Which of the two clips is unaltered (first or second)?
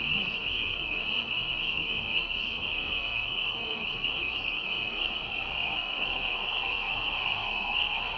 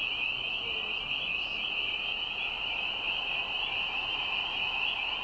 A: second